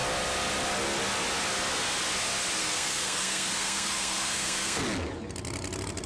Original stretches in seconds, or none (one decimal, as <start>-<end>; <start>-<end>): 0.0-2.6; 4.8-6.1